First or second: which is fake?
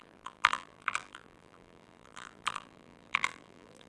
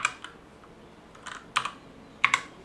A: first